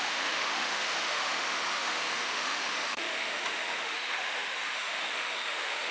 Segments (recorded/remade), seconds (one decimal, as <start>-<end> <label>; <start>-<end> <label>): 0.0-5.9 remade